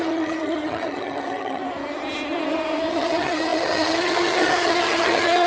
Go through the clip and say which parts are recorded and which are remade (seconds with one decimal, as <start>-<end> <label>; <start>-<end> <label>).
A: 0.0-1.6 remade; 1.6-2.9 recorded; 2.9-5.5 remade